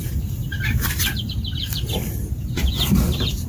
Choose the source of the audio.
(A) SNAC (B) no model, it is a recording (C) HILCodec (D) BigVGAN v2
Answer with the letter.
D